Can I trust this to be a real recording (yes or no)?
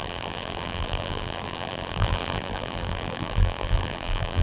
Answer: no